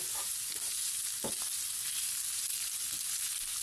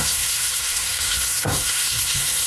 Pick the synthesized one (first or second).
second